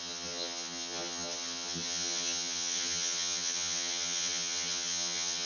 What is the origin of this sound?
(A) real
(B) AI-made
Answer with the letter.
B